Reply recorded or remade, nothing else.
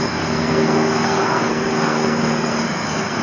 remade